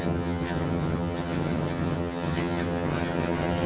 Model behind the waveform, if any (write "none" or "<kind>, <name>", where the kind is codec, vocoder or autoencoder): vocoder, HiFi-GAN